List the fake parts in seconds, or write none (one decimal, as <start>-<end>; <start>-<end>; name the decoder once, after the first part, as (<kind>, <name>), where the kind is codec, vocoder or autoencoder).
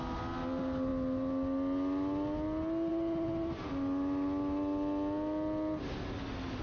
none